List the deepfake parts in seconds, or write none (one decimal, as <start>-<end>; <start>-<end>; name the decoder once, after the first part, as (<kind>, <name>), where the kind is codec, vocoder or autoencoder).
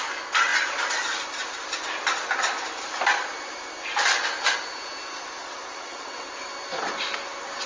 5.4-6.3 (vocoder, WaveNeXt)